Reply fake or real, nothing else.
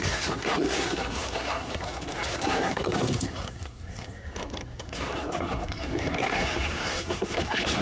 fake